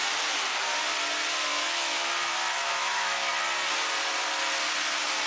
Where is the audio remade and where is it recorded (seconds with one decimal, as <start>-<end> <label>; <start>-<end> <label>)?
0.0-1.5 recorded; 1.5-2.1 remade; 2.1-2.6 recorded; 2.6-3.3 remade; 3.3-5.3 recorded